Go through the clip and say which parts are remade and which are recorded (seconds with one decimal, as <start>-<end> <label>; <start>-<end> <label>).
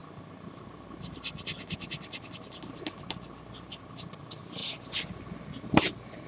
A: 0.0-6.3 recorded